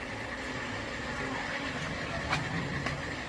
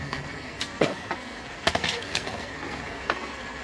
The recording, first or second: first